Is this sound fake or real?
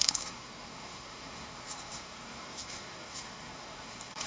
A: fake